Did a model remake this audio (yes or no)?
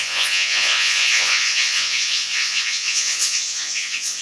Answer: yes